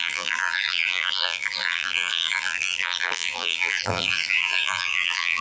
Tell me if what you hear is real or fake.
fake